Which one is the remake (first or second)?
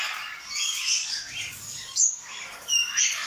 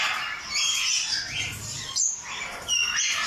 first